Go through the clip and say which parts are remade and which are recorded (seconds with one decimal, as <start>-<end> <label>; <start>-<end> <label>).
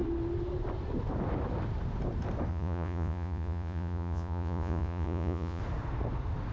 0.0-2.5 recorded; 2.5-5.6 remade; 5.6-6.5 recorded